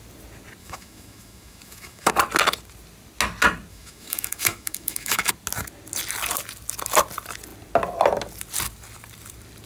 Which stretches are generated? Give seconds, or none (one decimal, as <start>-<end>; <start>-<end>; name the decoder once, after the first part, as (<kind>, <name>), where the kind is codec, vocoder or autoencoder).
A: 0.6-2.1 (autoencoder, DAC-VAE); 3.7-5.3